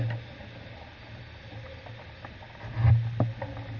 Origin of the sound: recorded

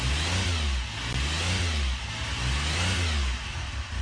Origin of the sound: recorded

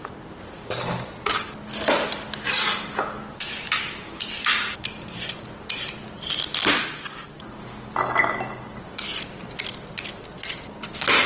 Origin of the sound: recorded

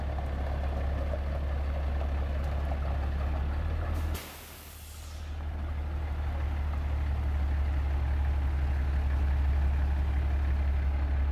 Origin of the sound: recorded